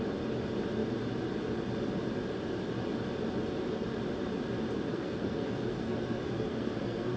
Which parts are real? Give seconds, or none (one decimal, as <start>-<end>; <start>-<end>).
0.0-4.9